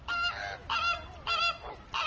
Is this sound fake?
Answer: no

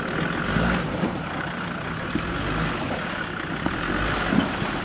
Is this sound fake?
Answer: no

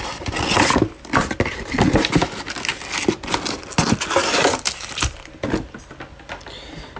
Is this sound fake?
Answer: no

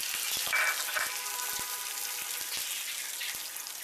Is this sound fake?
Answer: no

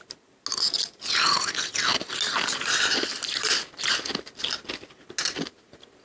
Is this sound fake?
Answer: no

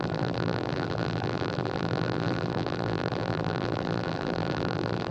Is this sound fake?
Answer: yes